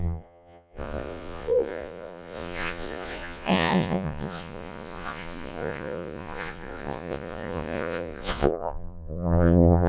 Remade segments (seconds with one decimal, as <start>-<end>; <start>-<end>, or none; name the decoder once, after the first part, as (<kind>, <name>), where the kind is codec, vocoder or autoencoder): 0.0-9.9 (vocoder, Vocos)